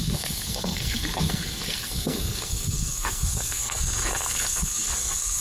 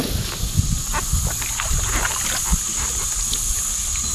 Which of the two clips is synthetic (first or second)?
first